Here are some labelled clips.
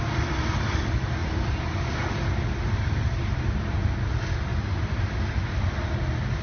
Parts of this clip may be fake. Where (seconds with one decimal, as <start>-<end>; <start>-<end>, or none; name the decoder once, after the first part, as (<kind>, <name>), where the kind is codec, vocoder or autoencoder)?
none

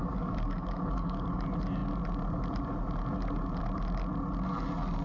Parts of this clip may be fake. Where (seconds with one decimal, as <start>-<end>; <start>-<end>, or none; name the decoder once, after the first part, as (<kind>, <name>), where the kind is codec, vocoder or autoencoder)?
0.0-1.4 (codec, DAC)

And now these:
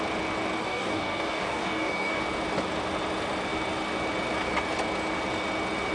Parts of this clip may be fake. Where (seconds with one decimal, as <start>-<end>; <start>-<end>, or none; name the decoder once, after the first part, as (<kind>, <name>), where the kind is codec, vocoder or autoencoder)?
0.6-2.2 (codec, DAC)

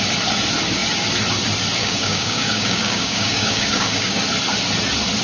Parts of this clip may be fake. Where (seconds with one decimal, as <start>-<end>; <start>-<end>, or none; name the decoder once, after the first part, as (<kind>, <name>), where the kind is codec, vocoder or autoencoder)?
1.8-4.2 (codec, DAC)

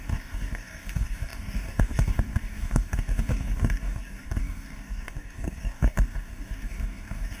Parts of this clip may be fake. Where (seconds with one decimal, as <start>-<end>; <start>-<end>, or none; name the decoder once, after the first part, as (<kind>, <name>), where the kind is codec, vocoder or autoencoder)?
0.0-7.4 (codec, DAC)

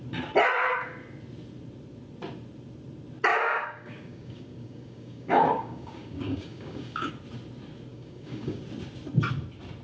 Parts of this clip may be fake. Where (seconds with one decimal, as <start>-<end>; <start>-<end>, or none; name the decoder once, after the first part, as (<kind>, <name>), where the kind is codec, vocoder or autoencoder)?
3.3-7.1 (codec, DAC); 7.9-8.6